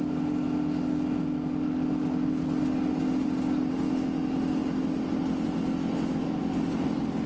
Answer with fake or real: real